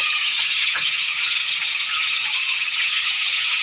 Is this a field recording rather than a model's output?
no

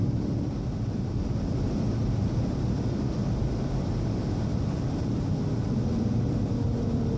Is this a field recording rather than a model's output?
yes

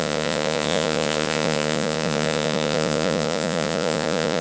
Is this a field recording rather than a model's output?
no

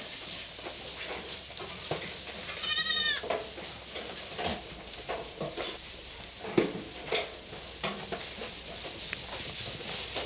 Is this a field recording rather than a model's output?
yes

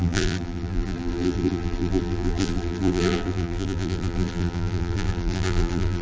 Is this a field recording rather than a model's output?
no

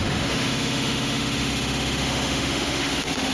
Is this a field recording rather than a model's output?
no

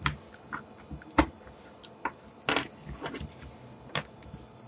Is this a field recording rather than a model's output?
yes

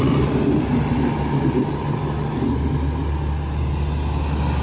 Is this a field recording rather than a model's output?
yes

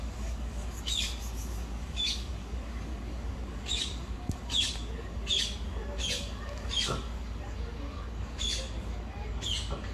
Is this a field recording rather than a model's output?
no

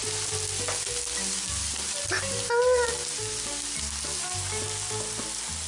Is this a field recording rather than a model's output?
yes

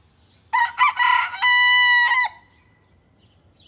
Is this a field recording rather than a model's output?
yes